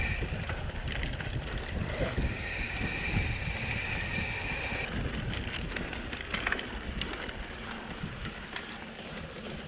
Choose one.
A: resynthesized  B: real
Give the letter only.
B